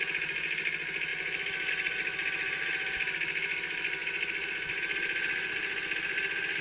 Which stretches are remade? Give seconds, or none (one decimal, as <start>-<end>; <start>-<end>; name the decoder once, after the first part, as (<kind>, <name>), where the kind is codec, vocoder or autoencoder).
none